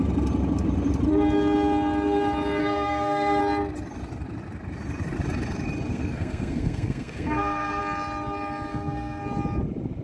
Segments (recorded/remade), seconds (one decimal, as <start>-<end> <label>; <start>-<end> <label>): 0.0-2.6 recorded; 2.6-3.4 remade; 3.4-5.9 recorded; 5.9-7.8 remade; 7.8-8.7 recorded; 8.7-9.2 remade; 9.2-10.0 recorded

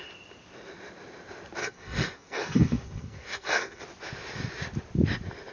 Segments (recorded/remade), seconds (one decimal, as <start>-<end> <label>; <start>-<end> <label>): 0.0-1.6 recorded; 1.6-3.8 remade; 3.8-5.5 recorded